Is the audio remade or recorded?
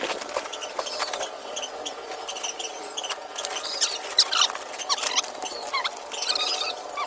recorded